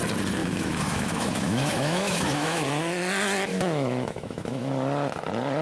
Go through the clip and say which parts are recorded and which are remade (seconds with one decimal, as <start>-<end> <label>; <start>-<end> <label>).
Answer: 0.0-0.4 recorded; 0.4-2.7 remade; 2.7-3.5 recorded; 3.5-4.7 remade; 4.7-5.6 recorded